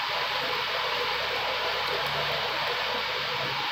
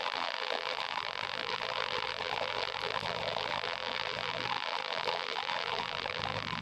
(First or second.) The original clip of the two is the first